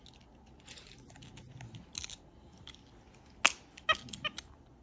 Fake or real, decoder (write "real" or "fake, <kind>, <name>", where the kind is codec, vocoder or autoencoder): real